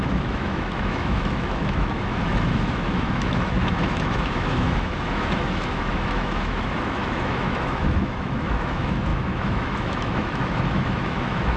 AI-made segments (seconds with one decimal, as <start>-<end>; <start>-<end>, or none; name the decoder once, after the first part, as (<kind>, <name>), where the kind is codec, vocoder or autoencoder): 0.0-11.6 (autoencoder, DAC-VAE)